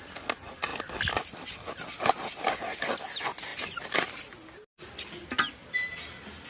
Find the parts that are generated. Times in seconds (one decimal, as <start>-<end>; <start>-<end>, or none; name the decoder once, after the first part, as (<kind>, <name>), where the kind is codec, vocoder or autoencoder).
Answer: none